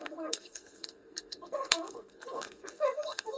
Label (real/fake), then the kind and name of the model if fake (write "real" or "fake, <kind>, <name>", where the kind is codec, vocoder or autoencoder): fake, codec, SNAC